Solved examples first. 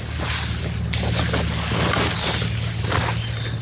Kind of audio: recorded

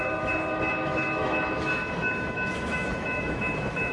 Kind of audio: remade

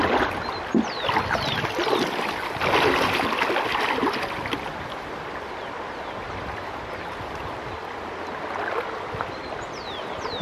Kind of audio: recorded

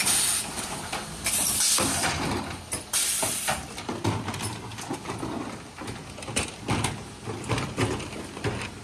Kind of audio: recorded